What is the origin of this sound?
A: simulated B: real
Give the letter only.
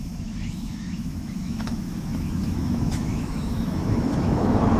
A